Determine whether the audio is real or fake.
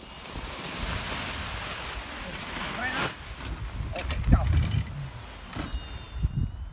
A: real